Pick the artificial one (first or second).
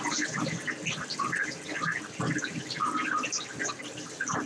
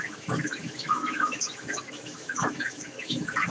second